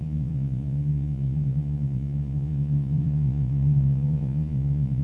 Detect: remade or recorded remade